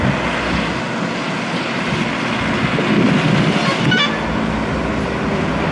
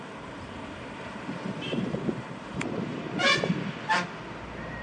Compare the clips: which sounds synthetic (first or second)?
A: second